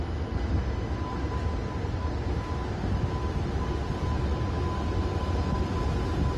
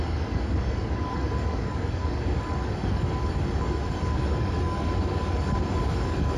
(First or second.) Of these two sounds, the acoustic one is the first